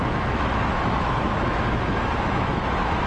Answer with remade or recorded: remade